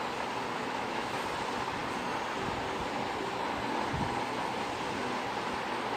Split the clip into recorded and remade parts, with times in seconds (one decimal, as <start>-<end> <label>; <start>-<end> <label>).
0.0-0.6 recorded; 0.6-1.2 remade; 1.2-6.0 recorded